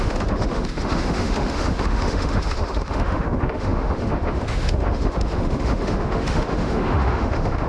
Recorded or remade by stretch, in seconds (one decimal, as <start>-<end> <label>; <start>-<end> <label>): 0.0-7.7 remade